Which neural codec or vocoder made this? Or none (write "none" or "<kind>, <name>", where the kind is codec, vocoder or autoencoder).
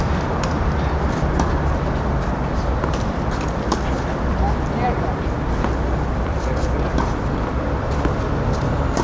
vocoder, BigVGAN v2